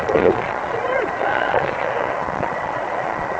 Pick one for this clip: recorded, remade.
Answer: remade